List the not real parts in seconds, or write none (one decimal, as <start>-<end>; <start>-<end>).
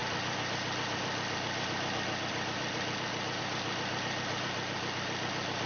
0.0-5.7